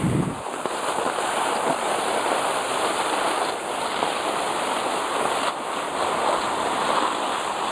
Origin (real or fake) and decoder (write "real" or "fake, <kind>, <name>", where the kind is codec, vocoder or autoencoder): real